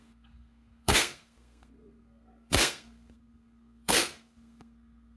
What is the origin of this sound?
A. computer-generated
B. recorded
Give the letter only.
A